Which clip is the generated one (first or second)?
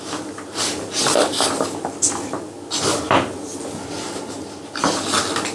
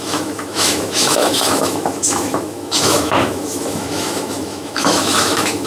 second